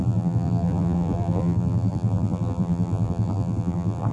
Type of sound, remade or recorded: remade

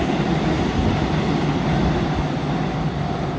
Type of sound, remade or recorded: recorded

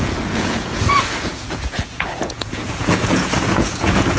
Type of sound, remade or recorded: remade